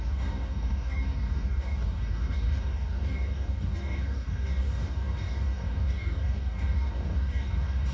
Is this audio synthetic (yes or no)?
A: yes